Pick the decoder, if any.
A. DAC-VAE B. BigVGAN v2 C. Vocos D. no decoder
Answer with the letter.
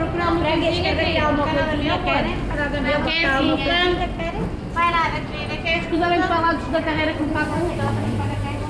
D